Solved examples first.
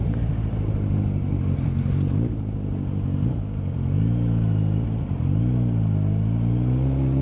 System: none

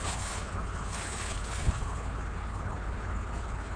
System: codec, HILCodec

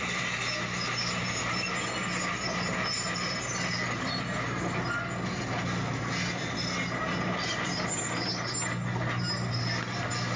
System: none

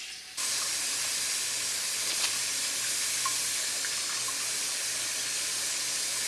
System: none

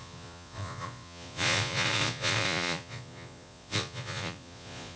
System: vocoder, Vocos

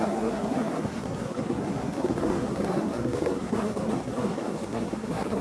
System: codec, SNAC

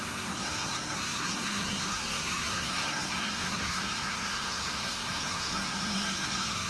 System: codec, SNAC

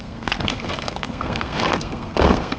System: codec, SNAC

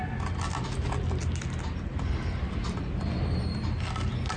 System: none